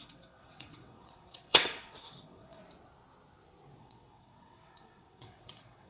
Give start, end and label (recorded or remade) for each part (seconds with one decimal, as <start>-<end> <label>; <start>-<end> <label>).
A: 0.0-2.6 remade; 2.6-3.8 recorded; 3.8-5.9 remade